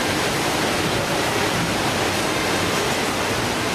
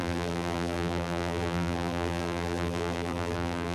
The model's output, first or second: second